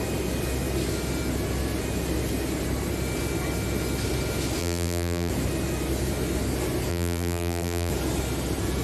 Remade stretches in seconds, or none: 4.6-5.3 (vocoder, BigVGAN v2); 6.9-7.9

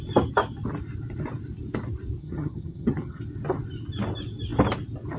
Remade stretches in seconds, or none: 2.2-3.2 (vocoder, HiFi-GAN)

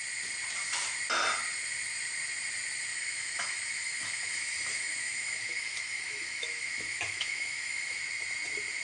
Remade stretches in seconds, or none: 2.9-8.0 (autoencoder, DAC-VAE)

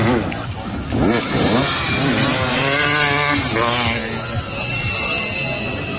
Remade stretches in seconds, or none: none